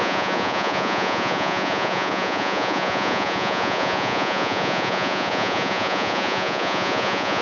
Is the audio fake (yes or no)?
yes